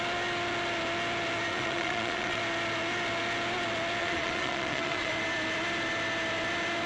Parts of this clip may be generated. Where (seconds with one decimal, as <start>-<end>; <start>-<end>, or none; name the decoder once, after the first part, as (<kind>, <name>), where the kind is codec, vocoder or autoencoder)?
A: 1.5-2.4 (vocoder, Vocos); 4.0-5.1

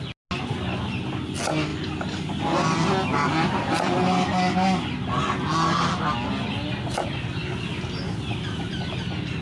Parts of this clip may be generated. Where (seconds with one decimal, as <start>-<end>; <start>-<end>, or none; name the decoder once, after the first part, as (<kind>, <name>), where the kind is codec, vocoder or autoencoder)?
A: none

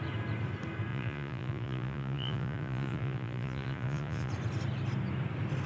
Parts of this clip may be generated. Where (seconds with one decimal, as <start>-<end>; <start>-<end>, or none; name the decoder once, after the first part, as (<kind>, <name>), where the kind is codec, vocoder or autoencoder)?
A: 0.9-4.3 (vocoder, Vocos)

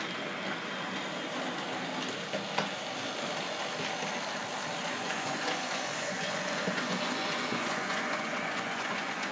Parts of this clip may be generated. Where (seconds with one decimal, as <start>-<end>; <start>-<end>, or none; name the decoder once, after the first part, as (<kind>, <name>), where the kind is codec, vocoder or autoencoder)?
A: 4.8-9.3 (vocoder, Vocos)

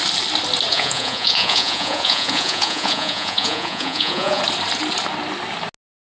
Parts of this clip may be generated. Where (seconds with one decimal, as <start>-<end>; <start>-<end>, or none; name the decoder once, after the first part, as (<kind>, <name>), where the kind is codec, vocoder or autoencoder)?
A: 0.7-4.4 (vocoder, Vocos)

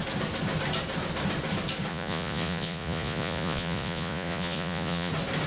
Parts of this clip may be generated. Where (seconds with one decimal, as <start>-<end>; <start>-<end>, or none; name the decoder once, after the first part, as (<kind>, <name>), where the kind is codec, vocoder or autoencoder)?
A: 1.9-5.1 (vocoder, Vocos)